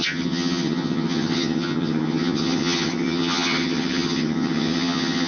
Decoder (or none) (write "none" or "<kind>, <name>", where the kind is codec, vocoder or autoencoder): vocoder, HiFi-GAN